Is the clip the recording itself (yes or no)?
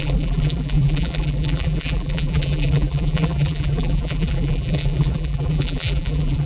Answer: no